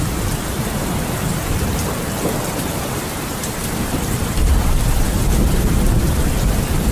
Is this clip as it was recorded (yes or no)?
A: no